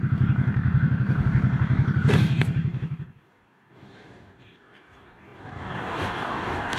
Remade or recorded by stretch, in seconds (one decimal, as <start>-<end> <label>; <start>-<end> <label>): 0.0-6.8 remade